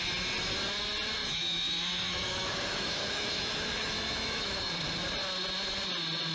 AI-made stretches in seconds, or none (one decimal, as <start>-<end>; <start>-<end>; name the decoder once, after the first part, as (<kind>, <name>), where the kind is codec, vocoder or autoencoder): 1.2-4.7 (autoencoder, DAC-VAE)